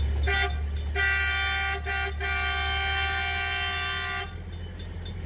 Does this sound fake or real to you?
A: real